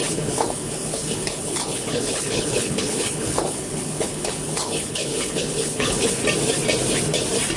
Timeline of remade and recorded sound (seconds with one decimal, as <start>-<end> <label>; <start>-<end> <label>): 0.0-6.2 remade; 6.2-7.6 recorded